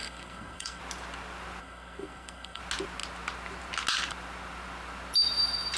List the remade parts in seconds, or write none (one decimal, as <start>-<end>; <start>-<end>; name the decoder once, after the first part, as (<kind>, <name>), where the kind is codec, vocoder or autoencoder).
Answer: 0.0-0.8 (codec, SNAC); 1.6-2.6